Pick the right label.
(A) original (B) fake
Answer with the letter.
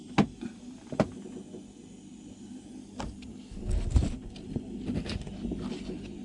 A